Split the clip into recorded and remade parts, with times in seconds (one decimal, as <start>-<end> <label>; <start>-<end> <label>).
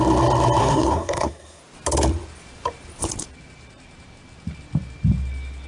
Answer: 0.0-0.6 recorded; 0.6-1.6 remade; 1.6-5.7 recorded